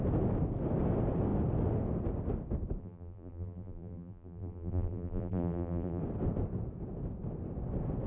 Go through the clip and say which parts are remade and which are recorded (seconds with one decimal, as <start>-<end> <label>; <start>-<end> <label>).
0.0-2.8 recorded; 2.8-6.0 remade; 6.0-8.1 recorded